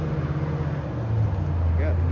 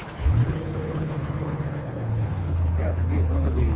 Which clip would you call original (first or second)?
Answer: first